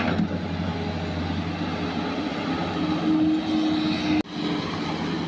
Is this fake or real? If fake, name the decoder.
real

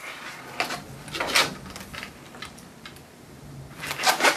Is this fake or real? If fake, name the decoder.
real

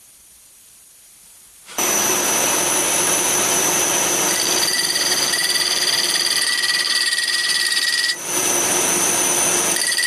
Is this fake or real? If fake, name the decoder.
fake, vocoder, BigVGAN v2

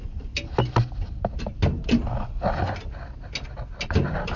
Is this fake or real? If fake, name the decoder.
real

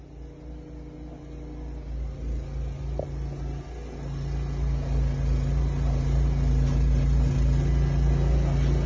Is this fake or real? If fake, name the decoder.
real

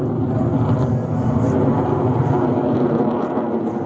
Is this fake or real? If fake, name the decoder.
real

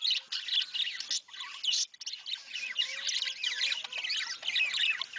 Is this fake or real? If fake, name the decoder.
real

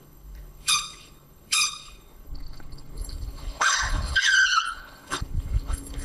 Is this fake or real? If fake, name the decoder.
fake, codec, HILCodec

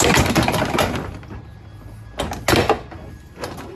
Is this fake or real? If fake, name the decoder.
real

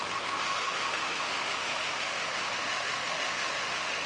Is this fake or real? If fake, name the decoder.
fake, autoencoder, DAC-VAE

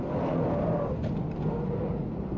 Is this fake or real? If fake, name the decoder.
real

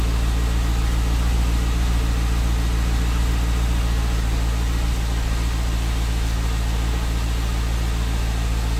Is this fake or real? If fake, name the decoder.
real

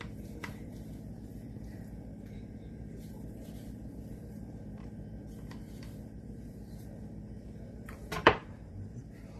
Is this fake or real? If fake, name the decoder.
fake, vocoder, BigVGAN v2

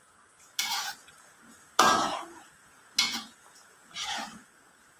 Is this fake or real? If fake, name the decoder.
fake, vocoder, Vocos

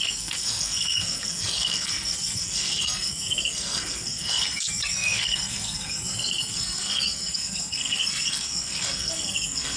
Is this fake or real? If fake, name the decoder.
fake, codec, SNAC